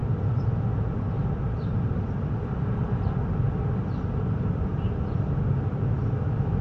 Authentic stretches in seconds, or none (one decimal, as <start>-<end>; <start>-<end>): 0.0-6.6